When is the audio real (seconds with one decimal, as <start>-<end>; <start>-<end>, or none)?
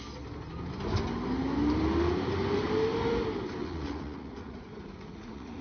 0.0-3.6